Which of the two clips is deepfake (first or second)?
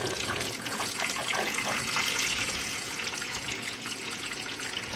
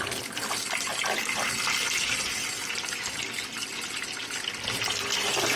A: first